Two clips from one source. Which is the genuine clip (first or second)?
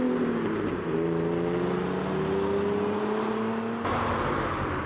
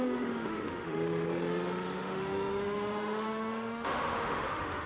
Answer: first